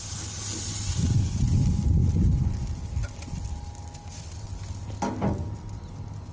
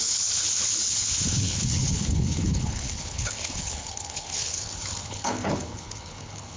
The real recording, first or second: first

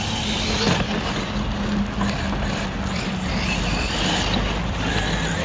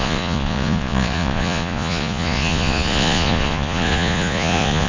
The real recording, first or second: first